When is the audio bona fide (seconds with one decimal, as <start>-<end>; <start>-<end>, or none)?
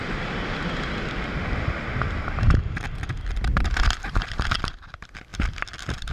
0.0-6.1